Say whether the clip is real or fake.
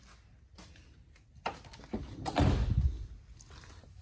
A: real